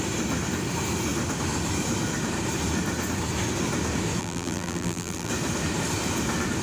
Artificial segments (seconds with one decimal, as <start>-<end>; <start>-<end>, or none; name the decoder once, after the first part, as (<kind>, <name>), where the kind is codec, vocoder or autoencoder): 4.2-5.3 (vocoder, BigVGAN v2)